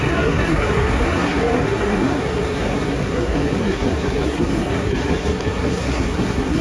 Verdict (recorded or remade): remade